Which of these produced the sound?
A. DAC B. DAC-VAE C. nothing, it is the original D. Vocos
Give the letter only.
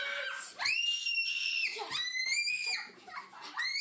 C